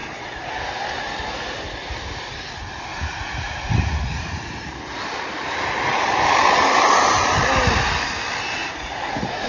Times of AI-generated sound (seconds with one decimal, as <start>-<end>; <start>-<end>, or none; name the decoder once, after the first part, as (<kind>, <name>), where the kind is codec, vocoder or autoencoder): 2.9-4.7 (vocoder, Vocos); 8.6-9.5